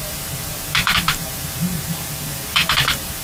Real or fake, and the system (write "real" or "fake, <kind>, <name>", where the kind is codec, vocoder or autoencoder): fake, vocoder, BigVGAN v2